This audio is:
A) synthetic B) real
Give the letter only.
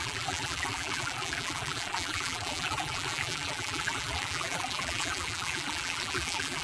A